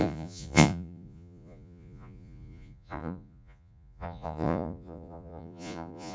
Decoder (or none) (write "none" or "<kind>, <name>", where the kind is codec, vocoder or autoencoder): vocoder, Vocos